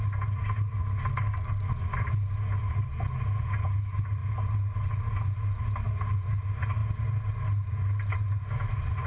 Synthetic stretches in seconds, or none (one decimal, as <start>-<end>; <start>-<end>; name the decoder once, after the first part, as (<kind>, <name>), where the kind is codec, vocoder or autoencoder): 1.1-1.7 (codec, DAC)